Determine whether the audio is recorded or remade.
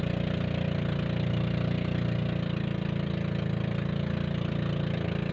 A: recorded